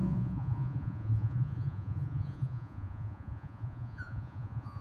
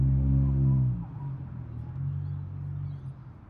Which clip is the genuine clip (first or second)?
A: second